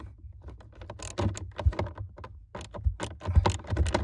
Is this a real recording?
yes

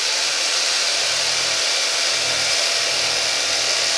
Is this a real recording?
yes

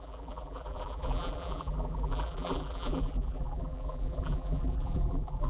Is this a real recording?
no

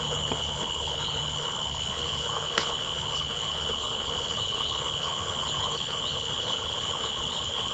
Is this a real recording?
no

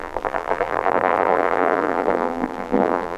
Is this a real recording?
no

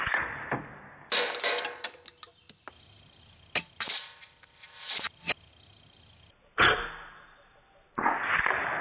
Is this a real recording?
yes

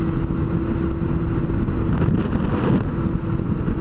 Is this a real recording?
yes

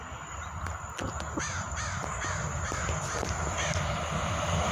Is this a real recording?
yes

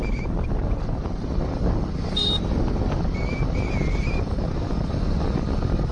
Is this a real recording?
yes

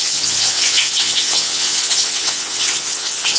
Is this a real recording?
no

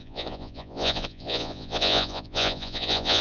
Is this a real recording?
no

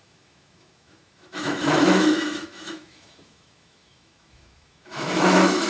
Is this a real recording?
no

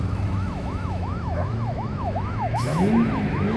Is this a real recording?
no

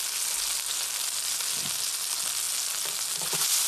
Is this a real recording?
yes